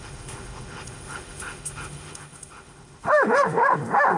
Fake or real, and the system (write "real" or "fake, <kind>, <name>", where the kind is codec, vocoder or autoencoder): fake, autoencoder, DAC-VAE